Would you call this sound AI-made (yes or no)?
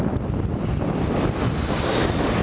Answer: no